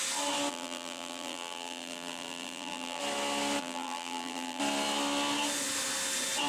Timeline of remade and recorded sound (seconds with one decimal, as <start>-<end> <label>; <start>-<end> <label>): 0.0-0.5 recorded; 0.5-3.0 remade; 3.0-3.6 recorded; 3.6-4.6 remade; 4.6-6.5 recorded